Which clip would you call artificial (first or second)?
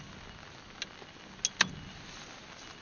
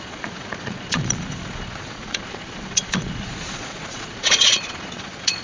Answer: second